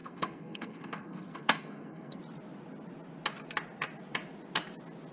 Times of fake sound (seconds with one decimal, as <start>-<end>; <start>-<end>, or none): 0.0-2.2